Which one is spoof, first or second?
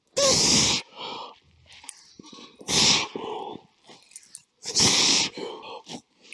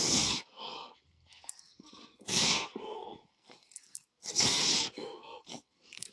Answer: second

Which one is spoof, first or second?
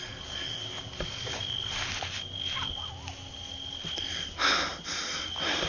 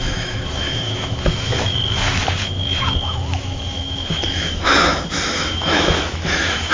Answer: second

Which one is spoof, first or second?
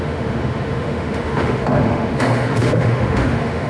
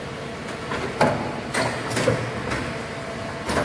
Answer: first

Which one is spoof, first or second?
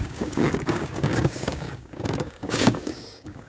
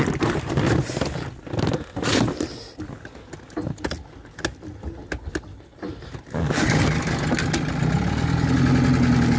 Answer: first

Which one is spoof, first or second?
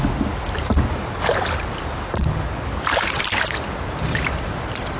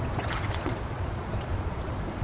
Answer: second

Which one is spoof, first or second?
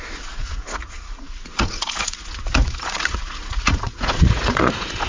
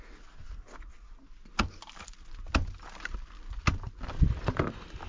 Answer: first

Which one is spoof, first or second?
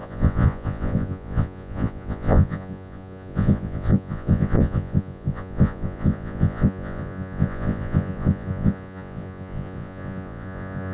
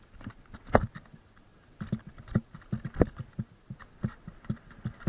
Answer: first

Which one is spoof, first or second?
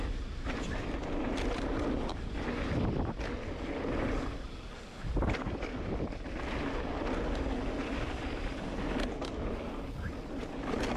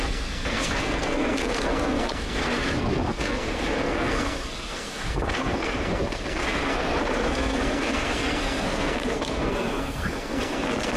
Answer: second